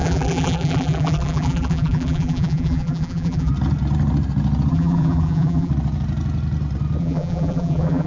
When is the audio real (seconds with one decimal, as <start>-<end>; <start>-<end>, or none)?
3.5-4.7; 5.7-7.0